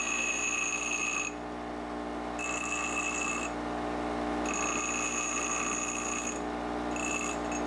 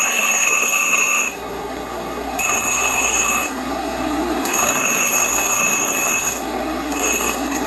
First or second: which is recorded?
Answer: first